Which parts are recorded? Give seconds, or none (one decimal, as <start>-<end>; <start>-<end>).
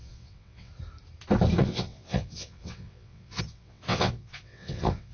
0.7-1.6